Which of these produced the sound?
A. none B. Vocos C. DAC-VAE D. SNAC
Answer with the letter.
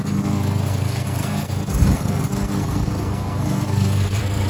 D